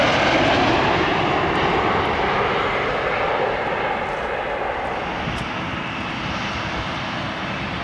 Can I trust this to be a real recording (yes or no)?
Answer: yes